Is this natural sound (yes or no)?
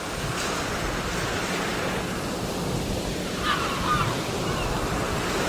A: no